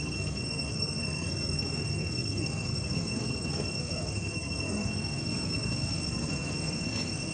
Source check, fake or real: fake